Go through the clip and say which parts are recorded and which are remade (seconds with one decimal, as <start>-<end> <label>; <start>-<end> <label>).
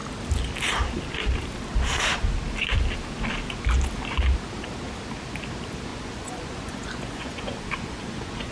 0.0-5.9 recorded; 5.9-8.5 remade